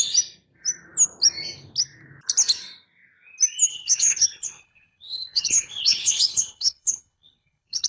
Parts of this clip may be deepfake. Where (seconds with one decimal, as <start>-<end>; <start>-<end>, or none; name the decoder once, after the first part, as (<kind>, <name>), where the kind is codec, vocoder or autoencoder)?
3.7-7.9 (codec, HILCodec)